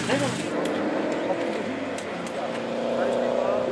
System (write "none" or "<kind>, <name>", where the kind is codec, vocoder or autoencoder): none